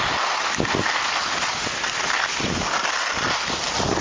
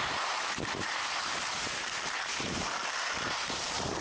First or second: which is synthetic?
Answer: second